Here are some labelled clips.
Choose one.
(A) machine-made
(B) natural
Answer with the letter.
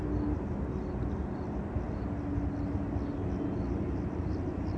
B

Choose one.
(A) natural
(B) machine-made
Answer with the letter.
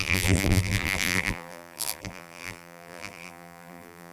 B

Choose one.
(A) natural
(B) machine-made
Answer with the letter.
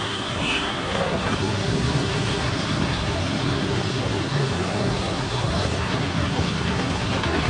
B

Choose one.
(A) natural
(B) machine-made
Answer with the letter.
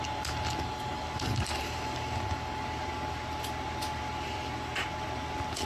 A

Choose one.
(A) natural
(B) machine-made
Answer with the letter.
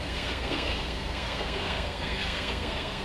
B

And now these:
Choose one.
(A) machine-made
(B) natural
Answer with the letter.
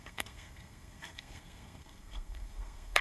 A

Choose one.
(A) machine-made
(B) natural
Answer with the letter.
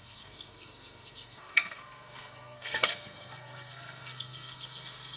A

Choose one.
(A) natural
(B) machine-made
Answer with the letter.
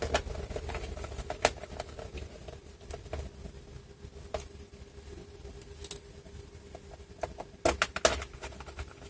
A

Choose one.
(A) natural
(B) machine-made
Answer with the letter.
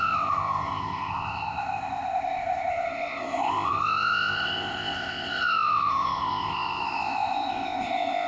B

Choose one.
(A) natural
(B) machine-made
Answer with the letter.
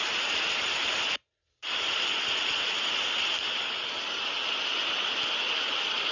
A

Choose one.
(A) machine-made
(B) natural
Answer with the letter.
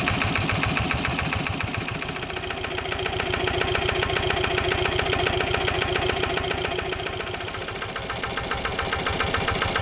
B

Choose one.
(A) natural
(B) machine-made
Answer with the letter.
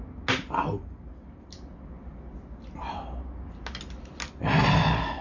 A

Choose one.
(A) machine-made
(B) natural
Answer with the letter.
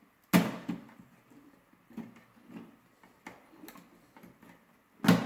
B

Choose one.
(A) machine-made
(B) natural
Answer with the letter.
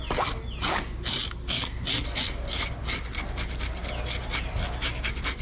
B